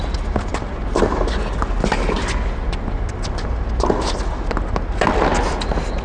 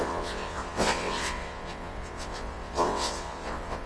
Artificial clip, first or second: second